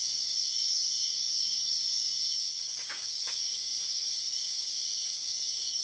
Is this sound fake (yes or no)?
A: yes